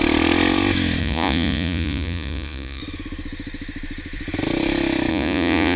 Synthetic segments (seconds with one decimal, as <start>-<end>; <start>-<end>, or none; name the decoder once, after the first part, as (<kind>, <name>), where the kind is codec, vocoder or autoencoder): 1.0-2.8 (vocoder, Vocos); 5.1-5.8

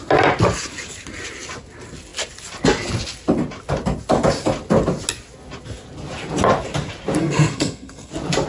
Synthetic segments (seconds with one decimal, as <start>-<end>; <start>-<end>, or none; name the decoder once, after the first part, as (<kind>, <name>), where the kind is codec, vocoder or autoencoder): 7.2-8.1 (codec, SNAC)